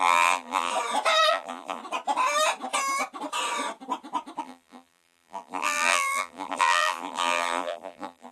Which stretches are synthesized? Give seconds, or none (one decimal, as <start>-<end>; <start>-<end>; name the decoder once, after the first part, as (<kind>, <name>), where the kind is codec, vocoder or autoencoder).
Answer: 0.0-0.7 (vocoder, BigVGAN v2); 1.3-1.8; 4.4-8.3